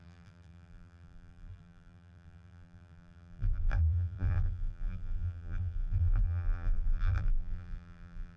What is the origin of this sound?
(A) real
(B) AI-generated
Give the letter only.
B